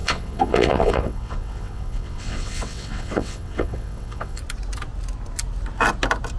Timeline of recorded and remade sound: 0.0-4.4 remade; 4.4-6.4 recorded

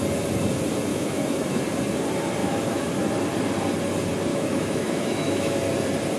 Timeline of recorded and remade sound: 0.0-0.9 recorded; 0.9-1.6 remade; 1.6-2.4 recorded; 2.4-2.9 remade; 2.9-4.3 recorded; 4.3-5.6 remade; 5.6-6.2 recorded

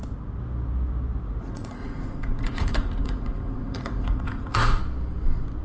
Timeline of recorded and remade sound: 0.0-1.4 recorded; 1.4-4.8 remade; 4.8-5.6 recorded

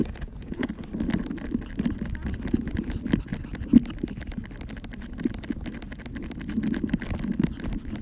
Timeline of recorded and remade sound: 0.0-0.7 remade; 0.7-8.0 recorded

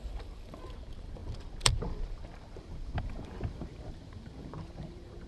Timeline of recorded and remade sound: 0.0-5.3 remade

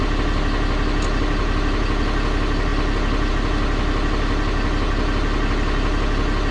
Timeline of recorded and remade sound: 0.0-6.5 recorded

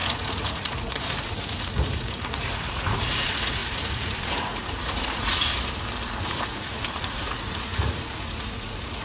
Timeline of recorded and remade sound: 0.0-5.5 remade; 5.5-6.3 recorded; 6.3-9.0 remade

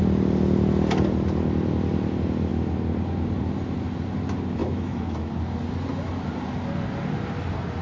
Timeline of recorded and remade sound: 0.0-4.6 recorded; 4.6-5.3 remade; 5.3-7.8 recorded